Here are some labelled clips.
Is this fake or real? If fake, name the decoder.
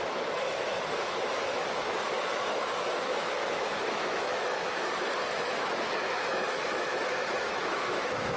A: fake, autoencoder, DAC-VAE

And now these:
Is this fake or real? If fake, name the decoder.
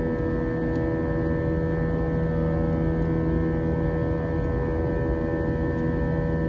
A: real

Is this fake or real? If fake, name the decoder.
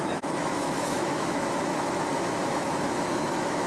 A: fake, autoencoder, DAC-VAE